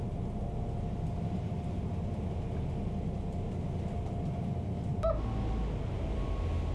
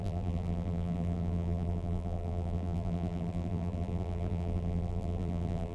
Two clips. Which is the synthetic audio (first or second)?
second